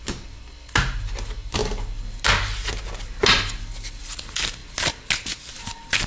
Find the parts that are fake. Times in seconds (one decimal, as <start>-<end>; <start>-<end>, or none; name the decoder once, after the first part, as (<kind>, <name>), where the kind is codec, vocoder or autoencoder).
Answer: none